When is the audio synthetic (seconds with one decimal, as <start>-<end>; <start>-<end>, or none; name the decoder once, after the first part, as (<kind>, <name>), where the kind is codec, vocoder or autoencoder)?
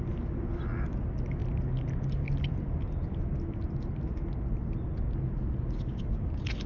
none